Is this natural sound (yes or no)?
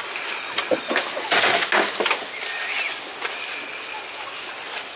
yes